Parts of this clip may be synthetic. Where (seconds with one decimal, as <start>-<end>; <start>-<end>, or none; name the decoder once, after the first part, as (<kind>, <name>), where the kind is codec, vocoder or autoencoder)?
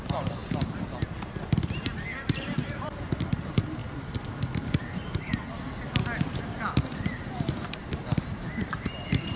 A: 0.0-0.4 (vocoder, BigVGAN v2); 2.1-3.8; 6.4-9.4